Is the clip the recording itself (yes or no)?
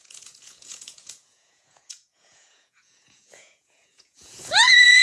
no